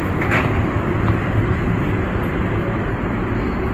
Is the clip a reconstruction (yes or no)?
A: no